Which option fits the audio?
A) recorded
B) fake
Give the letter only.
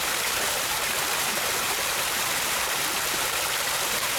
A